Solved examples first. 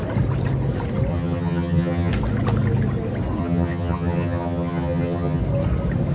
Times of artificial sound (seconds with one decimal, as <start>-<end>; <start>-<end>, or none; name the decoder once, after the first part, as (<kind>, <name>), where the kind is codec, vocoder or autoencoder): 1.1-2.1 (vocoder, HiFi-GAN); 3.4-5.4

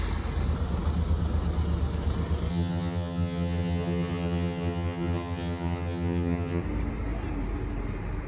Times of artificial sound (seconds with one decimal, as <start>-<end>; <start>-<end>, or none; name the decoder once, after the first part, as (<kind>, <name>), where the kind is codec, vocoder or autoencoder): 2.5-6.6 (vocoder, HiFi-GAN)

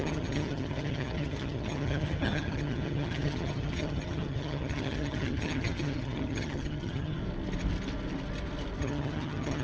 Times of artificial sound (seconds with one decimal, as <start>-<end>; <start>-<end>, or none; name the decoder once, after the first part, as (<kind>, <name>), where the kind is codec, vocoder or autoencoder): 0.0-7.2 (vocoder, HiFi-GAN); 8.8-9.6

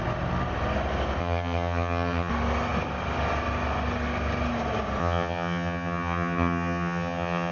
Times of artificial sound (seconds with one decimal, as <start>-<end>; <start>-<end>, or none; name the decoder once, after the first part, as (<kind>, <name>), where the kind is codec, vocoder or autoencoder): 1.2-2.3 (vocoder, HiFi-GAN); 5.0-7.5

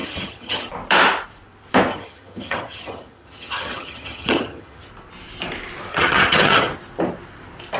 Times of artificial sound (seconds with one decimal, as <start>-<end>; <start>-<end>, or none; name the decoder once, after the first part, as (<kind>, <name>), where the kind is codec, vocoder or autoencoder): 0.0-0.7 (vocoder, HiFi-GAN); 1.9-4.9; 5.9-6.7

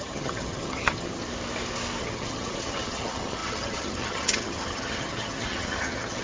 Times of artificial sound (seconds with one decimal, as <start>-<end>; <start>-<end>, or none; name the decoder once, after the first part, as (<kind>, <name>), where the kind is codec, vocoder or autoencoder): 0.0-1.2 (vocoder, HiFi-GAN); 2.0-6.2

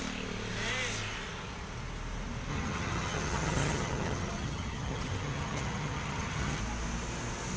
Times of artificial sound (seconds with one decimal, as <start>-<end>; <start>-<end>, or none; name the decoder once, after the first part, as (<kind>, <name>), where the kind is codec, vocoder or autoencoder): 2.5-6.6 (vocoder, HiFi-GAN)